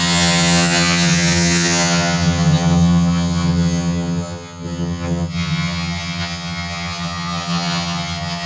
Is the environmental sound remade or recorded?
remade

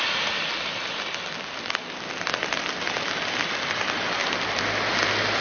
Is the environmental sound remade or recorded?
recorded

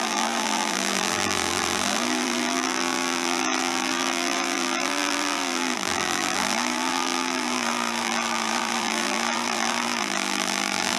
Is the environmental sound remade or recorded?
remade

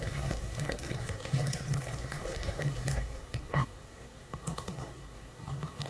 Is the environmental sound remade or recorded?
remade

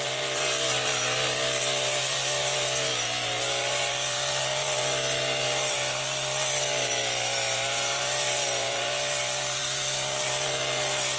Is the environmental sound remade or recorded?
remade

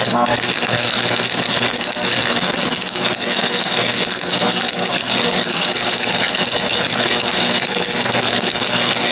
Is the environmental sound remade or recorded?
remade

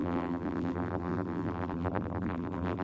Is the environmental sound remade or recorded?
remade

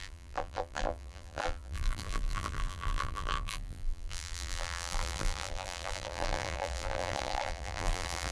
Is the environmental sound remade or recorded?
remade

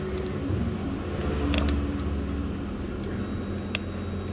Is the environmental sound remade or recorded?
recorded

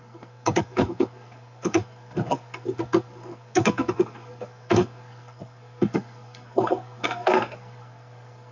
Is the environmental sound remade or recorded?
remade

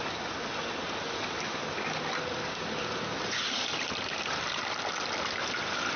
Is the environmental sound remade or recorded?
recorded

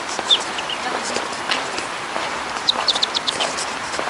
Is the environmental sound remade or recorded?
remade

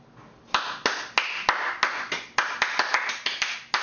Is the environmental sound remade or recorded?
recorded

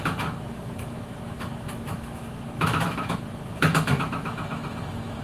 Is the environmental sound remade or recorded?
remade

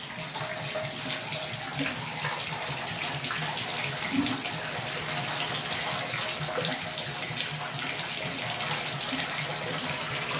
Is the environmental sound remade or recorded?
recorded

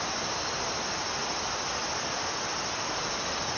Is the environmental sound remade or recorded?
recorded